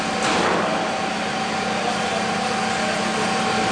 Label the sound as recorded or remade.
recorded